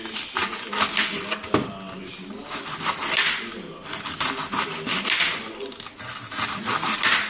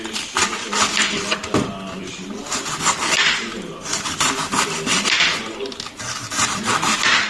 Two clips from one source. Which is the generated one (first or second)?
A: second